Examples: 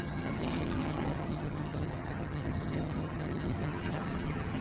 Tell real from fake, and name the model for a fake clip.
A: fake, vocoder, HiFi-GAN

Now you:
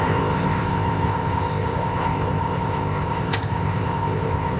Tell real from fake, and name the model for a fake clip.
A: fake, codec, ZipCodec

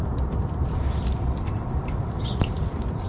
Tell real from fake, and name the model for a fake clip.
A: fake, vocoder, BigVGAN v2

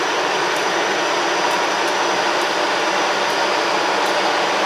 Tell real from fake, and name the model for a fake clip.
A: real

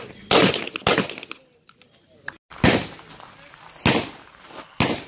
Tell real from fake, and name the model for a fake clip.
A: real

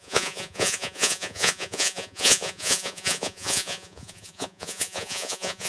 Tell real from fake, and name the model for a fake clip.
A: fake, vocoder, Vocos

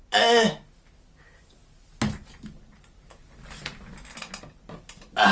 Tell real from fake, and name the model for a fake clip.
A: real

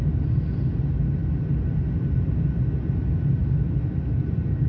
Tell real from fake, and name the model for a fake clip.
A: real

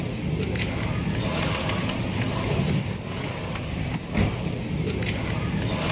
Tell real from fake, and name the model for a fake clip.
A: real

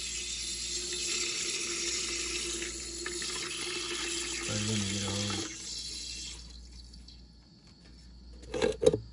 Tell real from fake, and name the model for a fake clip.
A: real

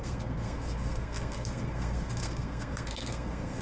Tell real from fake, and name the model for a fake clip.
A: fake, codec, SNAC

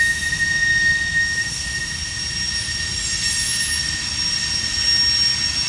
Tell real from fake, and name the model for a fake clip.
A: real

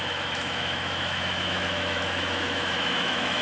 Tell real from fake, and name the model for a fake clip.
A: fake, autoencoder, DAC-VAE